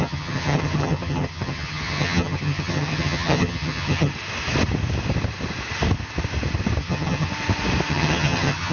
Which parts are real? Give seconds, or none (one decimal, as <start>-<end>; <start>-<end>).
4.1-6.8; 7.3-7.9